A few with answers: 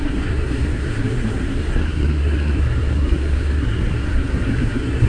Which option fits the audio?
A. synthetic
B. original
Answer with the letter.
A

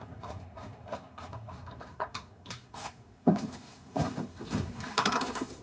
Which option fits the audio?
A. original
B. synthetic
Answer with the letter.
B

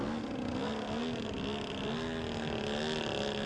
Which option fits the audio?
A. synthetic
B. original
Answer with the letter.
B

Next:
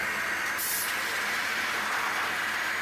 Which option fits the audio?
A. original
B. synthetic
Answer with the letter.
A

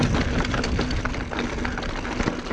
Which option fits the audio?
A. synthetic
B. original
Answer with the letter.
B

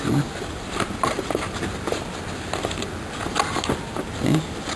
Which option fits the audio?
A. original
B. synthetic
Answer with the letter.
A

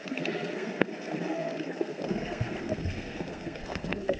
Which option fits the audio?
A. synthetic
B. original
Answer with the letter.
A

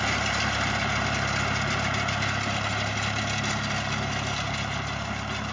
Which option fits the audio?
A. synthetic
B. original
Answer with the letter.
B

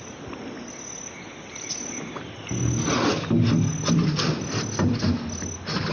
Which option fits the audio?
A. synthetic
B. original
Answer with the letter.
B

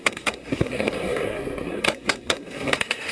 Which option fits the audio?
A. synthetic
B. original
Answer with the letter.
A